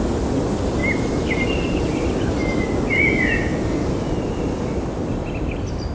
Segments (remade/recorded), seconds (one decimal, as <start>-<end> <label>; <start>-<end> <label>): 0.0-5.9 recorded